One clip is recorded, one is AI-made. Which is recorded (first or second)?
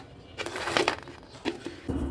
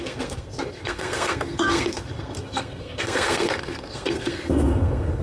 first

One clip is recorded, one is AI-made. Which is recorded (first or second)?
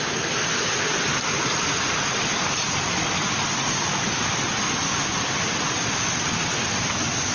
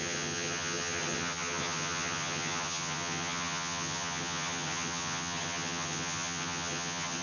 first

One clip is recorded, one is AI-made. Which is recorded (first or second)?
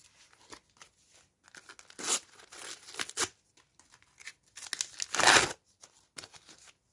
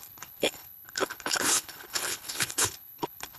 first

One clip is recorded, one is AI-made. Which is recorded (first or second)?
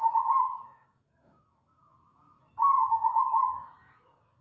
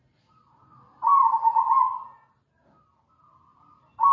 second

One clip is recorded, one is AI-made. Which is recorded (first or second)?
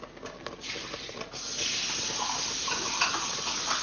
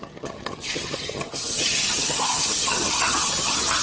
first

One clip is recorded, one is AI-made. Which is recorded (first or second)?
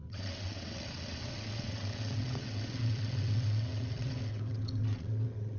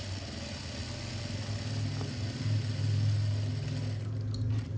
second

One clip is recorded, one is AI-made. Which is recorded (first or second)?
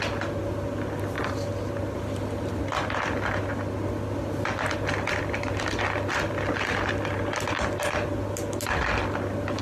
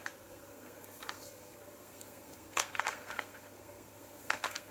first